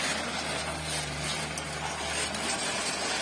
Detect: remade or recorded recorded